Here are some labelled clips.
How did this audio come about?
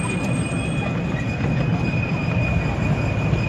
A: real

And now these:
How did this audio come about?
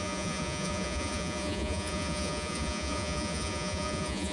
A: fake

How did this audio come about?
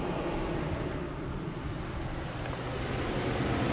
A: real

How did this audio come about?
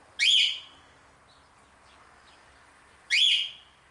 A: real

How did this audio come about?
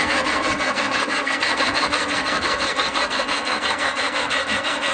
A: fake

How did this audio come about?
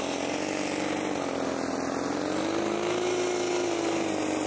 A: real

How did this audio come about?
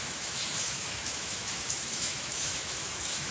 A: fake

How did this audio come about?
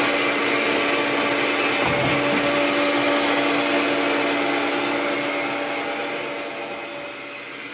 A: real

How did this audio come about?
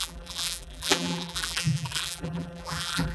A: fake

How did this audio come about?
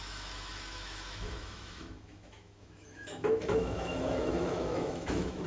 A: fake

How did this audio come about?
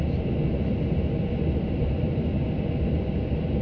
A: real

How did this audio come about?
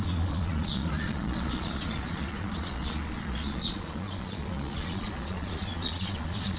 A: fake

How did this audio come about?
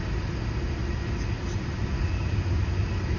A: real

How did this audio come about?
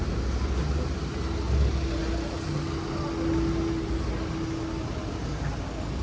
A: real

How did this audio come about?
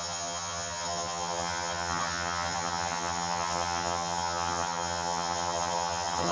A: fake